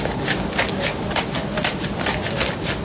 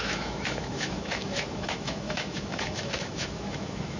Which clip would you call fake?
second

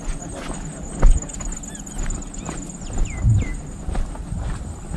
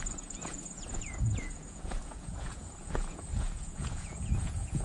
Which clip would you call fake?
second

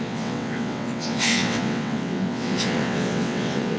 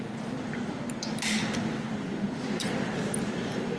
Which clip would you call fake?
first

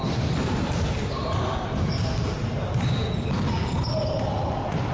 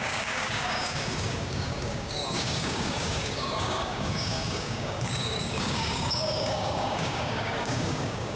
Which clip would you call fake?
second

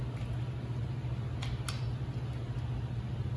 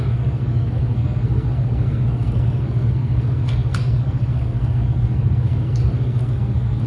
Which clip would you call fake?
second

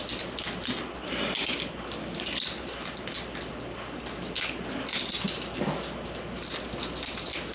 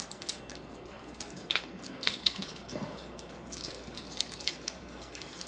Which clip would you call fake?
second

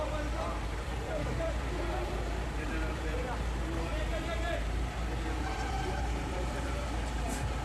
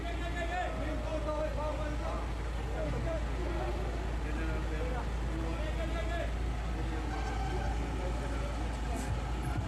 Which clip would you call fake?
first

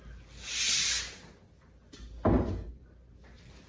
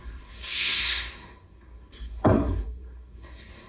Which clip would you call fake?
second